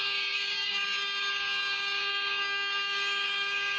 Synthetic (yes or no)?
yes